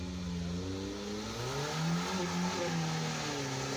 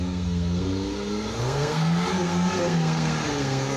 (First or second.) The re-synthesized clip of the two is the second